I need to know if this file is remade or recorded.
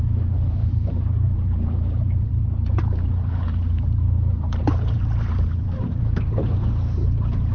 remade